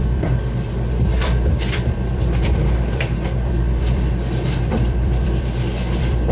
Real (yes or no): no